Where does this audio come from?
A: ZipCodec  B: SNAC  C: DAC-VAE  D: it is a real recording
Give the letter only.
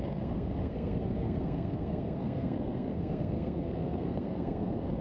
B